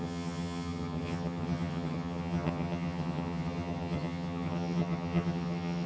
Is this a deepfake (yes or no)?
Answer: yes